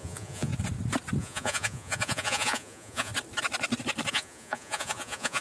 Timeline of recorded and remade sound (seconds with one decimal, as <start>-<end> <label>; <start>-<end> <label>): 0.0-0.5 remade; 0.5-1.2 recorded; 1.2-3.1 remade; 3.1-4.1 recorded; 4.1-5.4 remade